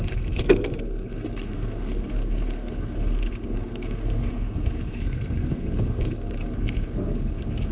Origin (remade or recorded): remade